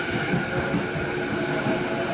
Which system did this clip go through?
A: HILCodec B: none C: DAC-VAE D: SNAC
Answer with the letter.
B